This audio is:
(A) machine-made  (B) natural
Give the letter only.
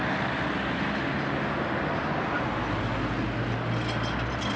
B